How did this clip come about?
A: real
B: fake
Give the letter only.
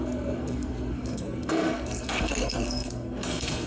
B